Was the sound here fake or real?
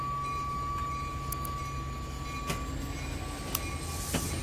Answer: real